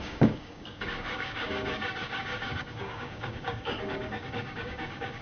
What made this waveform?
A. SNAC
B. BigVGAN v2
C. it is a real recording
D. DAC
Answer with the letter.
D